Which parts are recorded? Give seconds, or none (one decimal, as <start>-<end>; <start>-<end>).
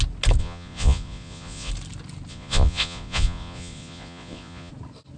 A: 0.0-0.4; 1.7-2.3; 4.7-5.2